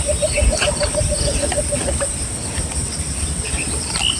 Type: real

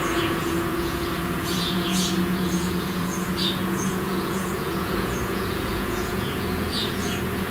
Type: fake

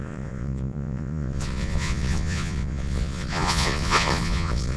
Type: fake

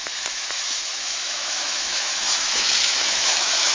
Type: fake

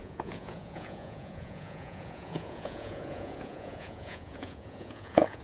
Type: fake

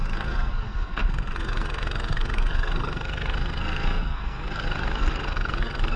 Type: fake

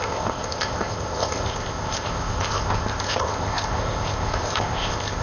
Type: fake